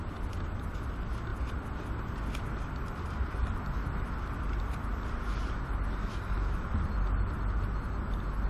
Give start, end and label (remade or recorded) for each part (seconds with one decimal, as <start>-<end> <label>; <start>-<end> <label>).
0.0-8.5 recorded